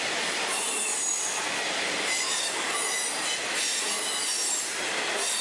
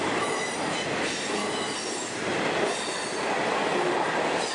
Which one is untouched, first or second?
first